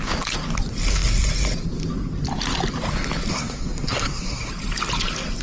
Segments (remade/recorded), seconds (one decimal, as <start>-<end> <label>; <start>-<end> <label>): 0.0-3.3 recorded; 3.3-4.5 remade; 4.5-5.4 recorded